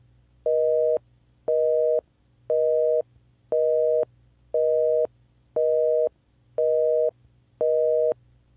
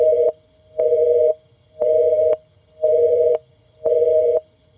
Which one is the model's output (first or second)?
second